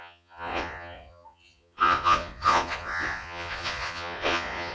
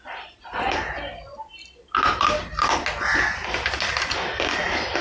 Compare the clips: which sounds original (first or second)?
second